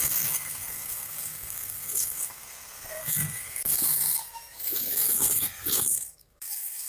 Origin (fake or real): fake